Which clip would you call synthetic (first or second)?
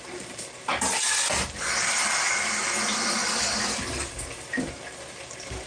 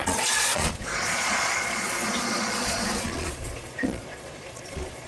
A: second